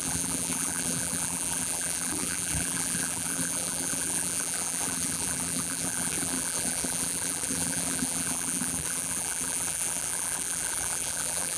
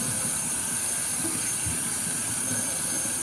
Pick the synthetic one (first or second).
first